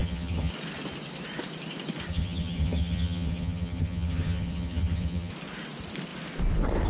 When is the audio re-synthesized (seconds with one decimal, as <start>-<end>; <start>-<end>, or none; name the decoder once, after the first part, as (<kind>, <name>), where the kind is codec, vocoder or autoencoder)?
0.0-0.5 (vocoder, HiFi-GAN); 2.1-5.3